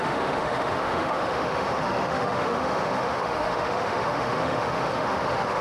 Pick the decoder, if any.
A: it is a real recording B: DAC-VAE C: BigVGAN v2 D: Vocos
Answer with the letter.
B